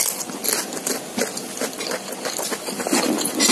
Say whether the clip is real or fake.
real